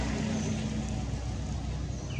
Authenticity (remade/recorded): recorded